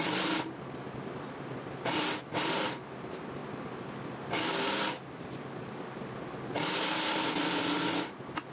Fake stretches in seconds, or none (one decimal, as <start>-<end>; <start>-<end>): none